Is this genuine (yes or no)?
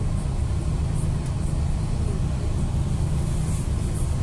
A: yes